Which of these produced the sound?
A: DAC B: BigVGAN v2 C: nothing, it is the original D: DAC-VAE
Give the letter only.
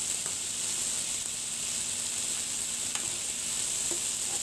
C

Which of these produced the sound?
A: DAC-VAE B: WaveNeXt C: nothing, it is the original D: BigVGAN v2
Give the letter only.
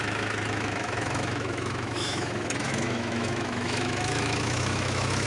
A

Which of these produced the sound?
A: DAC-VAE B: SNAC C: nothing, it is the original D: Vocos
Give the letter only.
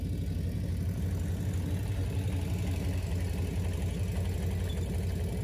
C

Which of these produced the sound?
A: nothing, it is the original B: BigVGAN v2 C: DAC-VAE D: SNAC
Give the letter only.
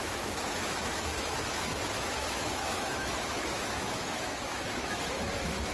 C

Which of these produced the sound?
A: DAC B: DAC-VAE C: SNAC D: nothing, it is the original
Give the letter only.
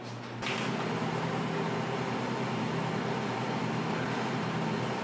D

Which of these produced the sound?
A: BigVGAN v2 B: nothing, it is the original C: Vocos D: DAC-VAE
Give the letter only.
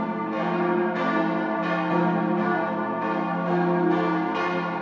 B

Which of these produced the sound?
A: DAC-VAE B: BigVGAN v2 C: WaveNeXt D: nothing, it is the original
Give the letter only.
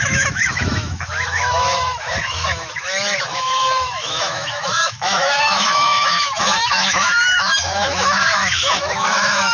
A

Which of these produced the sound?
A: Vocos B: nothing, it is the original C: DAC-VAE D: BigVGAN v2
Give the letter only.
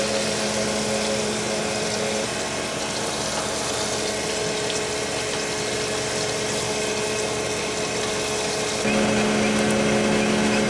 B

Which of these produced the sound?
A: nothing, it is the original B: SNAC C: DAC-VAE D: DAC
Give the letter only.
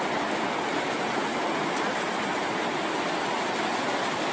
A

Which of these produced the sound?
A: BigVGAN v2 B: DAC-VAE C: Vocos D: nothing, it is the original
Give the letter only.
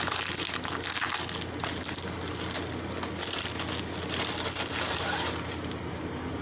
D